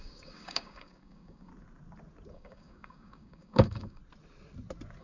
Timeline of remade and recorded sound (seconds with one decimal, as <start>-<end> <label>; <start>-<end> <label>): 0.0-1.5 remade; 1.5-2.3 recorded; 2.3-4.0 remade; 4.0-5.0 recorded